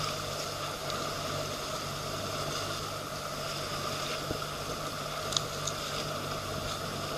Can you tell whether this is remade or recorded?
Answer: recorded